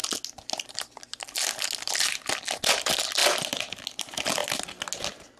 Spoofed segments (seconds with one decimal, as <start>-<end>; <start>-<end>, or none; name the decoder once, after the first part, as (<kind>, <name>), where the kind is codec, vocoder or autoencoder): none